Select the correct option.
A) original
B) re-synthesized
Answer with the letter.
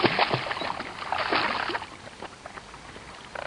A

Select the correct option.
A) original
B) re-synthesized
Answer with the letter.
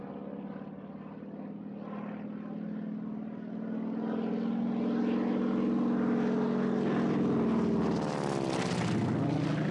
A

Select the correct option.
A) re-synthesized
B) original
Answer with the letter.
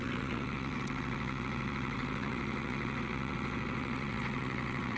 A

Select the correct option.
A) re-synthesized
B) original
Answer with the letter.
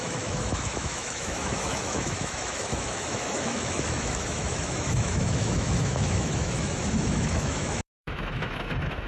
A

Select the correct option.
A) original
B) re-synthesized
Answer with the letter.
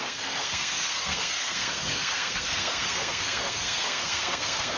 B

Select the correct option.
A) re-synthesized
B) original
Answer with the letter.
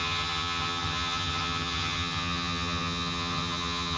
A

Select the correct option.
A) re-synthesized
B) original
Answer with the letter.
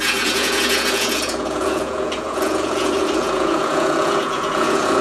A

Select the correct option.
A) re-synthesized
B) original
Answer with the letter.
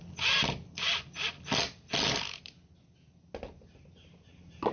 B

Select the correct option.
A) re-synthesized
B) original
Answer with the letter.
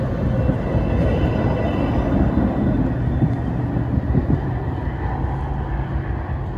B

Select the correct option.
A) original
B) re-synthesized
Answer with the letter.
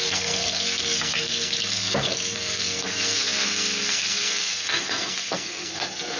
B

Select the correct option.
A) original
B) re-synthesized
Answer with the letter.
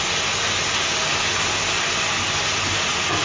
A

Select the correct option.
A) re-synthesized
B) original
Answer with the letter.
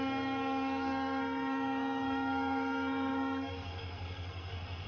A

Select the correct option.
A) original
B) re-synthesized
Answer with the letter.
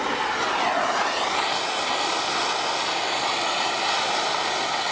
A